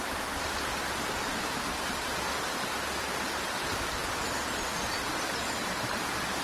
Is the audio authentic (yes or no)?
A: yes